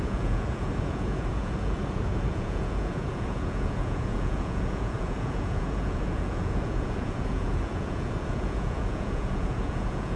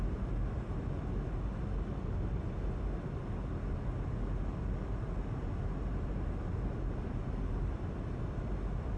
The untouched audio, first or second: second